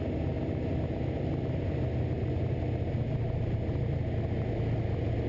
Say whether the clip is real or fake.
real